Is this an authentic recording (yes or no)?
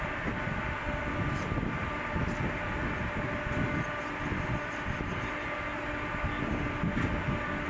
yes